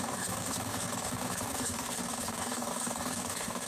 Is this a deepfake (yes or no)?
yes